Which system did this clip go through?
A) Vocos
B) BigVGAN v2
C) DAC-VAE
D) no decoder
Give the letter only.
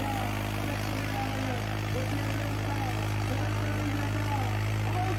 D